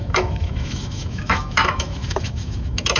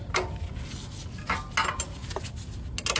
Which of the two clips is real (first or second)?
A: second